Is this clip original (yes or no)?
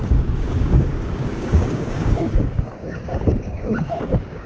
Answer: no